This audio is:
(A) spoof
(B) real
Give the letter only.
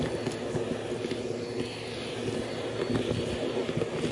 B